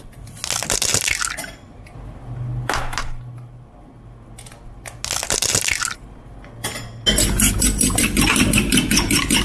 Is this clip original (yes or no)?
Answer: yes